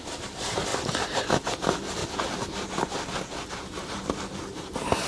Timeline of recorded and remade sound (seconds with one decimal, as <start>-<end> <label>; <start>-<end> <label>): 0.0-5.1 recorded